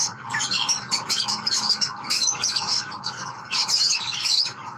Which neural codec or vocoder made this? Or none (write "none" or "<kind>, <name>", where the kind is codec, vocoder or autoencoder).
codec, DAC